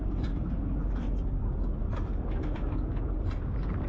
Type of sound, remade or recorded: recorded